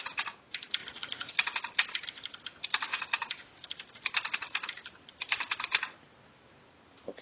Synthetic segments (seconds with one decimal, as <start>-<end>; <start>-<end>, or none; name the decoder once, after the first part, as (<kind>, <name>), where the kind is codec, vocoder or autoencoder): 0.8-1.3 (vocoder, Vocos)